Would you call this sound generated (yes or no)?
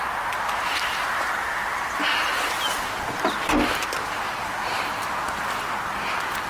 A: no